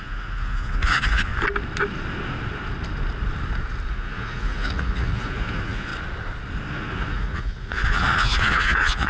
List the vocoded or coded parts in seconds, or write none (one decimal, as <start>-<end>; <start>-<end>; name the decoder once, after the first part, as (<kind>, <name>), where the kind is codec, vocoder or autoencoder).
0.0-1.3 (vocoder, Vocos); 3.9-5.9; 6.7-9.1